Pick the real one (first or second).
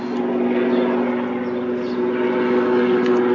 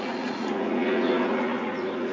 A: first